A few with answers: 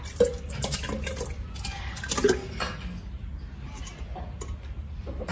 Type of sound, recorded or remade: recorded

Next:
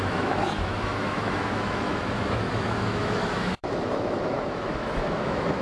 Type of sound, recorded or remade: remade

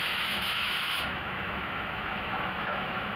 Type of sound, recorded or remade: remade